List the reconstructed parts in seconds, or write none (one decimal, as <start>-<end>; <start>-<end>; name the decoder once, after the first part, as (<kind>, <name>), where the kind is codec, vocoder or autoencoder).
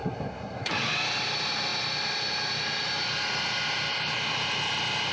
0.0-0.7 (codec, SNAC)